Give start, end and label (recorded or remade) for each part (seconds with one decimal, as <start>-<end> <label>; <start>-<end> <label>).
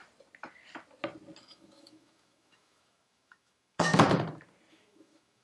0.0-1.4 recorded; 1.4-3.9 remade; 3.9-4.7 recorded; 4.7-5.4 remade